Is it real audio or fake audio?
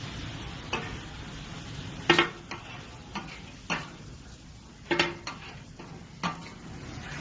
real